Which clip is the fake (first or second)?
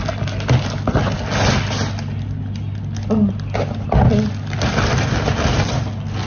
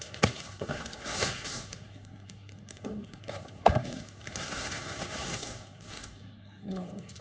second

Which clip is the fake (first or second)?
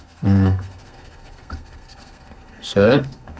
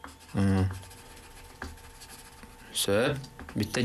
first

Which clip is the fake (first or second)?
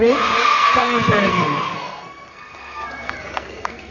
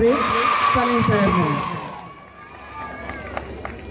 first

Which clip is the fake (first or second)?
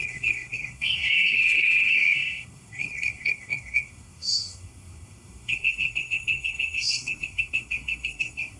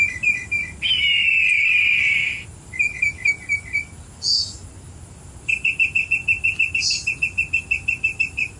first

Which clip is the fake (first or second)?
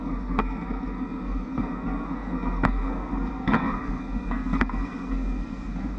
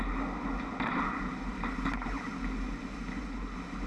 first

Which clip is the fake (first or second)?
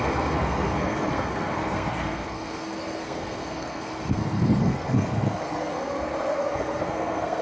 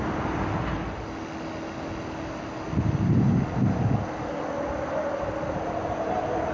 first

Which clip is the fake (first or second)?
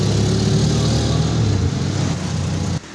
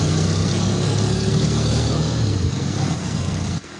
second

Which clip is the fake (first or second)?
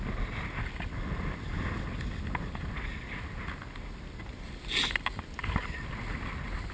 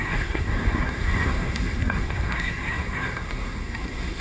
second